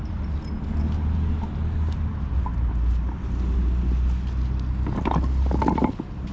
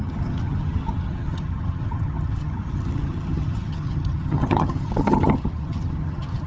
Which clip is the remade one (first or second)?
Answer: second